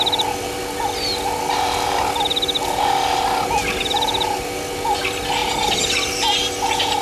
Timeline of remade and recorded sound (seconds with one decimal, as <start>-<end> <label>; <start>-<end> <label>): 0.0-7.0 recorded